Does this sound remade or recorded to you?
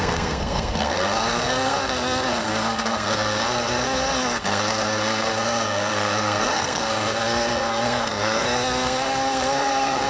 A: remade